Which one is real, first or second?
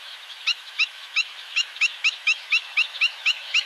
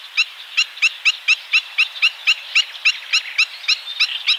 second